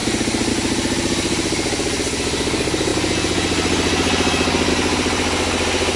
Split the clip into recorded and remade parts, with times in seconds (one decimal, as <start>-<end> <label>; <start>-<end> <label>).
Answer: 0.0-6.0 recorded